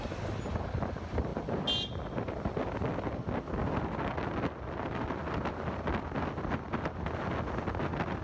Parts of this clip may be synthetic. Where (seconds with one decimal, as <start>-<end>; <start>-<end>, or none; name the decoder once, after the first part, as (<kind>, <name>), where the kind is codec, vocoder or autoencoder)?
none